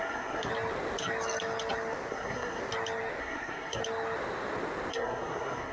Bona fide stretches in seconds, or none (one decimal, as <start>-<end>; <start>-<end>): 0.5-2.1; 2.6-3.2; 3.8-4.9